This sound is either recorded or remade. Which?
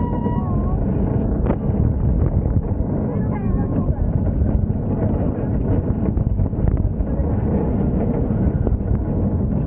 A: recorded